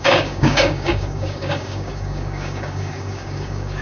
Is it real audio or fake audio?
fake